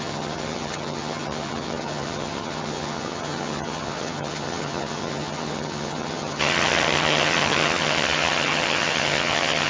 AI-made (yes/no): yes